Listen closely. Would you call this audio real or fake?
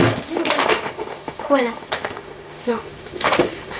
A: fake